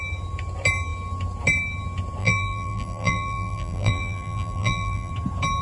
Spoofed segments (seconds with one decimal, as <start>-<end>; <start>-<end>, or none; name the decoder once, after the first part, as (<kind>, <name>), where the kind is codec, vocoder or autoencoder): 2.2-5.1 (vocoder, BigVGAN v2)